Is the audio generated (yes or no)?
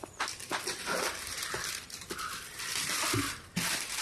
yes